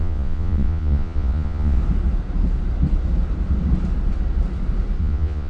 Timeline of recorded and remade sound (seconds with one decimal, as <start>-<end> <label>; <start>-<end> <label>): 0.0-1.8 remade; 1.8-5.0 recorded; 5.0-5.5 remade